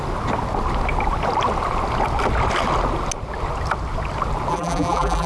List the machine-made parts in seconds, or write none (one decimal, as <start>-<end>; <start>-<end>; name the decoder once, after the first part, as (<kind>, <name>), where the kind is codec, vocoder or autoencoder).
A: 4.5-5.3 (vocoder, BigVGAN v2)